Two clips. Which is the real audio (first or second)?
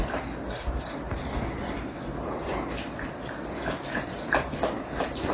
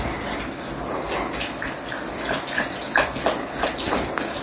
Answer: second